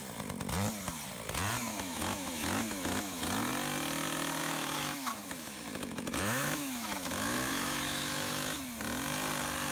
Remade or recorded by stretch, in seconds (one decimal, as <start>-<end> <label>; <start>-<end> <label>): 0.0-1.7 recorded; 1.7-3.2 remade; 3.2-4.4 recorded; 4.4-8.6 remade; 8.6-9.7 recorded